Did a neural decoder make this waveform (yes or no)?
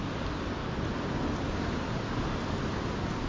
no